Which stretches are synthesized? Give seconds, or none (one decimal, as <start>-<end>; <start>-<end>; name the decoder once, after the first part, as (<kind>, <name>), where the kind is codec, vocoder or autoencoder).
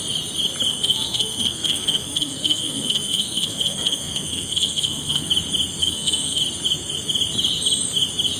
0.7-5.3 (codec, SNAC); 5.8-6.4